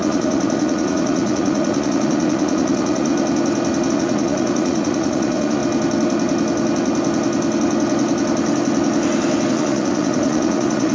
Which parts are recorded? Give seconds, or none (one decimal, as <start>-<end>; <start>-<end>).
3.1-3.9; 5.6-9.5